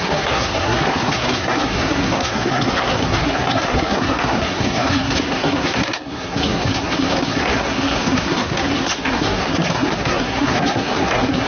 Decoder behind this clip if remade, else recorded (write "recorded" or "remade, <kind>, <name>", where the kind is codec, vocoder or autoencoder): remade, codec, SNAC